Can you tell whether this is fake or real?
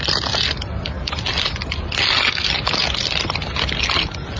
real